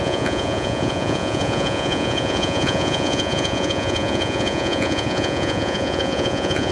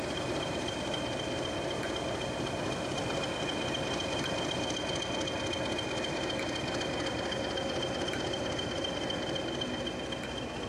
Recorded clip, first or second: second